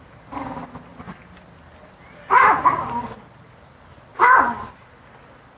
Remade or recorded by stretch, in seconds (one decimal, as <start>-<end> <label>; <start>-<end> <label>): 0.0-5.6 recorded